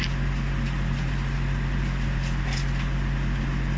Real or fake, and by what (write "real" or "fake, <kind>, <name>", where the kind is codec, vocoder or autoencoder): real